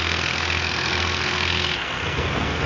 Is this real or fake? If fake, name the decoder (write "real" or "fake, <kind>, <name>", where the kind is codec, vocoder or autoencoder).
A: fake, codec, SNAC